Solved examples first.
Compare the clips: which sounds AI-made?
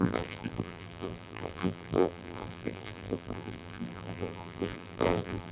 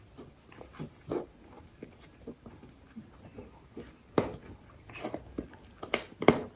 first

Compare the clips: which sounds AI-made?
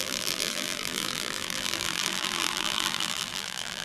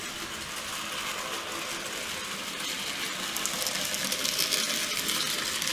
first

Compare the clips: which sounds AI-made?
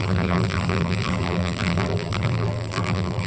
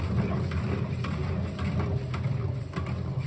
first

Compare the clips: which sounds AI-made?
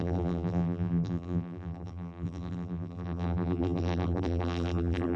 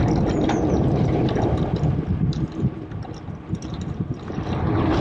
first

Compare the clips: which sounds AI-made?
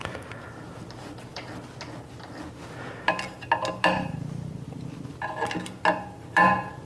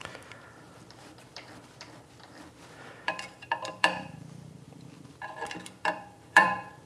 second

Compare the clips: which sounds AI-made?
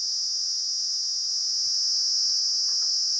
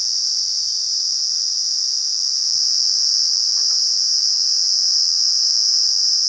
second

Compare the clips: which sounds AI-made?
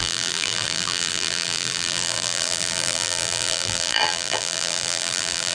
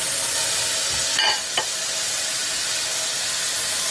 first